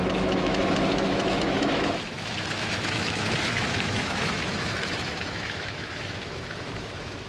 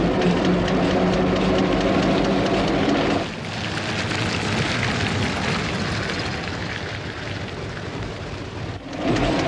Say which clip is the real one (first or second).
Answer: second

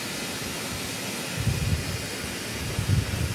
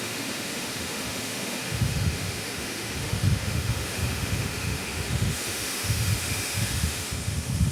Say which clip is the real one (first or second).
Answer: first